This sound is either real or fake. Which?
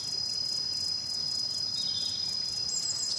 real